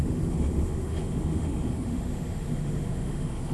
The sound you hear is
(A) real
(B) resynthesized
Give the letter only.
B